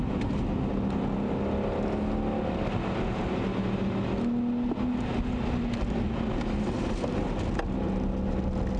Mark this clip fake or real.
real